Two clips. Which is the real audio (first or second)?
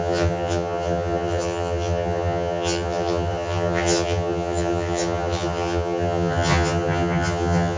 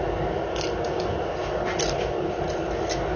second